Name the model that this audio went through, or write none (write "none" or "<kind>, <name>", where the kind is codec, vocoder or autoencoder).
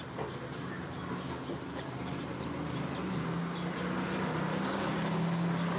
none